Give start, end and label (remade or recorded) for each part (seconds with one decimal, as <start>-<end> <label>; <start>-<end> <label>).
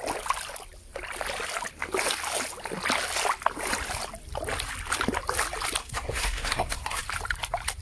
0.0-5.8 recorded; 5.8-7.0 remade; 7.0-7.8 recorded